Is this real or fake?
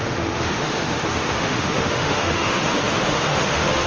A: fake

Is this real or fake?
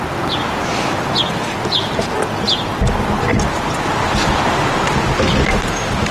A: real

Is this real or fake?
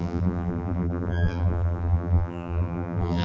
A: fake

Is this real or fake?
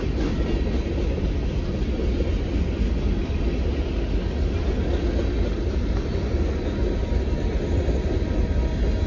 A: real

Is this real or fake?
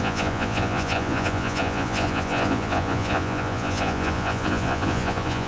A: fake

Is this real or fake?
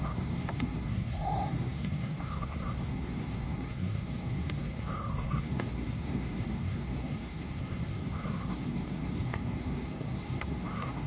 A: fake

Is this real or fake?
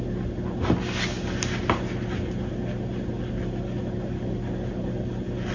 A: real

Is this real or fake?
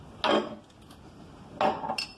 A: real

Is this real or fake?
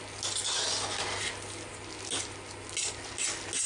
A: real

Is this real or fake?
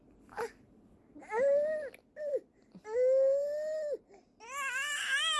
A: real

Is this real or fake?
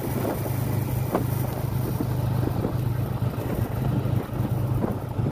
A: real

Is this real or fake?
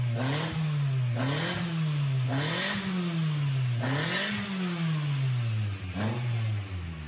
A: real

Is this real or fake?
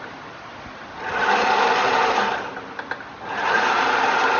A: real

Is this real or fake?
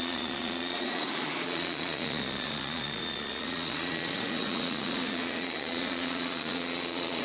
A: fake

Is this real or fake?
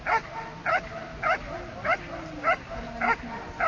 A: real